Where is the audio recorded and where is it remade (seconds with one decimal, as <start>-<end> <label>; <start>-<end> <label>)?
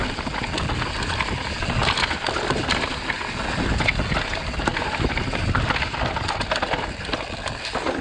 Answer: 0.0-4.7 recorded; 4.7-7.6 remade; 7.6-8.0 recorded